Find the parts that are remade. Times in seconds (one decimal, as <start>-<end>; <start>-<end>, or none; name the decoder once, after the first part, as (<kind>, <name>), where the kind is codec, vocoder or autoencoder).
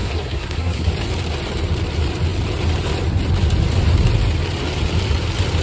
0.0-0.9 (codec, SNAC)